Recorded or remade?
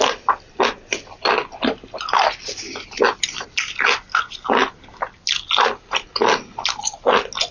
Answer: recorded